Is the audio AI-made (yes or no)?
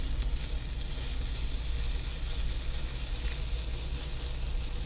no